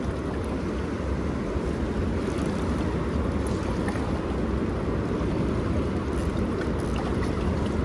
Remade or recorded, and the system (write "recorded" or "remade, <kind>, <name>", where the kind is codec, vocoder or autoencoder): recorded